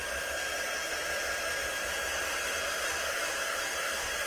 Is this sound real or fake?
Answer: real